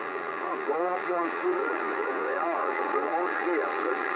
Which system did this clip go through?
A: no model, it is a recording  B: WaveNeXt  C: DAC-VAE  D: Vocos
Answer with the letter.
D